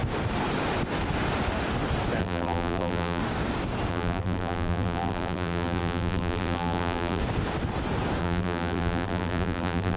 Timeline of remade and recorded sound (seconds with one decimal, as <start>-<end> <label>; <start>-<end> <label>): 0.0-2.2 recorded; 2.2-3.2 remade; 3.2-3.9 recorded; 3.9-7.2 remade; 7.2-8.2 recorded; 8.2-10.0 remade

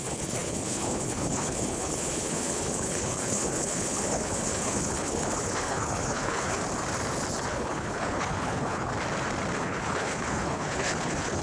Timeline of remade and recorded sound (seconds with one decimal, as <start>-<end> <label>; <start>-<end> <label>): 0.0-6.6 remade; 6.6-7.5 recorded; 7.5-8.9 remade; 8.9-9.6 recorded; 9.6-11.4 remade

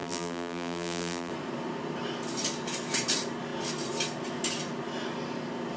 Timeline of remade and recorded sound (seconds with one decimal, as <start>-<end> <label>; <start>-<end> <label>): 0.0-1.3 remade; 1.3-5.8 recorded

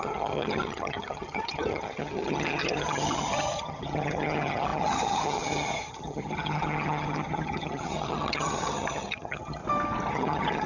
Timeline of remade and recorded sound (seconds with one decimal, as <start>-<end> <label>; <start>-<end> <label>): 0.0-9.6 remade; 9.6-10.1 recorded; 10.1-10.7 remade